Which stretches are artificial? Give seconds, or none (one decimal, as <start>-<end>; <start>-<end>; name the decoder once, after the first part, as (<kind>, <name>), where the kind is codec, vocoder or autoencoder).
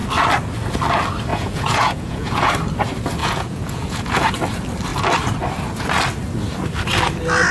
1.3-2.5 (vocoder, Vocos); 3.2-4.3